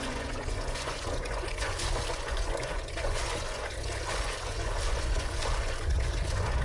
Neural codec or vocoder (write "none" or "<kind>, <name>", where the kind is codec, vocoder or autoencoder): vocoder, Vocos